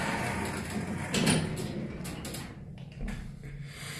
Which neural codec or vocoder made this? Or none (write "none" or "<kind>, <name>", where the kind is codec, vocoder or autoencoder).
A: none